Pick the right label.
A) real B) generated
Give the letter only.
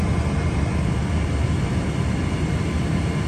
A